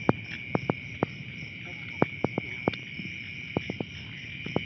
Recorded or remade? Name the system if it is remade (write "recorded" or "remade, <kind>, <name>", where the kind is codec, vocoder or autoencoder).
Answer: recorded